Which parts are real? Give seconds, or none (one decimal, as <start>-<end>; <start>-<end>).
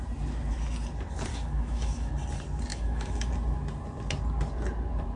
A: 0.0-1.3; 2.1-2.7; 3.3-5.2